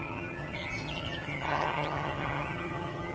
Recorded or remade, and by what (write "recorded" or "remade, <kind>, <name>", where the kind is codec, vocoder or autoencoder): remade, vocoder, HiFi-GAN